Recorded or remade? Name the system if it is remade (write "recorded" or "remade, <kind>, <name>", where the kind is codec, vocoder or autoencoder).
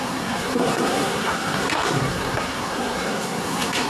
remade, codec, SNAC